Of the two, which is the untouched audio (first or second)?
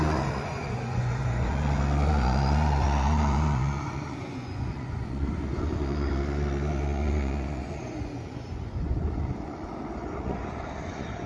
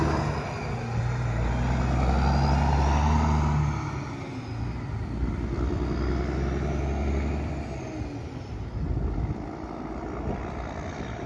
second